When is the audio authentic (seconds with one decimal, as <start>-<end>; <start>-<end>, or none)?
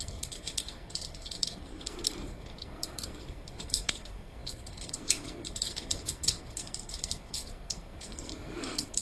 none